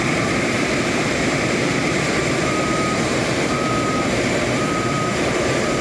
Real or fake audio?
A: fake